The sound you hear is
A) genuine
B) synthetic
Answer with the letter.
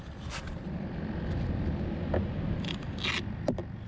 A